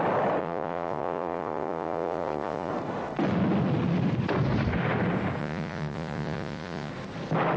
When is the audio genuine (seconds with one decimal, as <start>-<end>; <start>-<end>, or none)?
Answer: 0.0-0.4; 2.7-5.4; 6.9-7.6